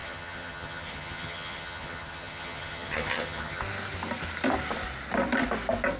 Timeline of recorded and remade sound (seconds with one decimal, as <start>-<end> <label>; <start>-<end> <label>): 0.0-3.6 remade; 3.6-6.0 recorded